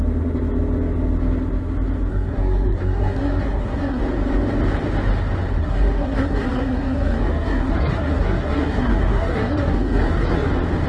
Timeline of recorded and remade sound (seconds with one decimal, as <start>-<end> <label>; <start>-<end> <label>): 0.0-2.1 recorded; 2.1-4.0 remade; 4.0-5.6 recorded; 5.6-10.5 remade; 10.5-10.9 recorded